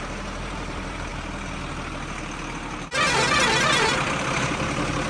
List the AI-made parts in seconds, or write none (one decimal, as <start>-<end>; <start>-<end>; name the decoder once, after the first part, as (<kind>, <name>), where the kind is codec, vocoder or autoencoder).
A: 0.0-1.1 (vocoder, BigVGAN v2); 4.2-5.1